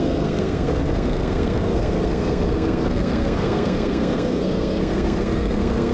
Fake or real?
fake